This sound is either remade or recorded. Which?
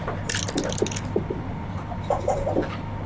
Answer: recorded